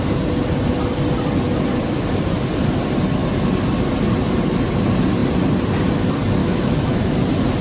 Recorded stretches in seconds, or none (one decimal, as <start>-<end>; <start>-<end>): 0.0-6.4; 7.1-7.6